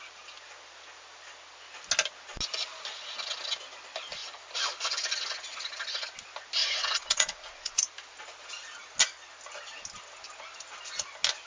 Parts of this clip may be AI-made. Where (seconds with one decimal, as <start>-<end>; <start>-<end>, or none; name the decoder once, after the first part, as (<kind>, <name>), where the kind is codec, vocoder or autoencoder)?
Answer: 6.6-7.8 (vocoder, Vocos)